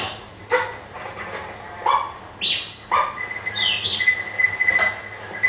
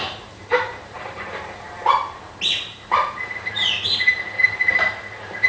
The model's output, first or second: second